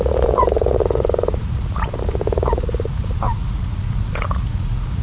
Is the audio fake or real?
fake